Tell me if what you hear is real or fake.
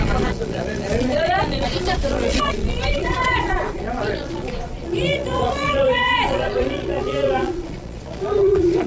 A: fake